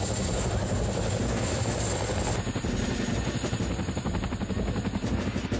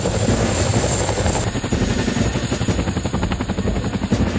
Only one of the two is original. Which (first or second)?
first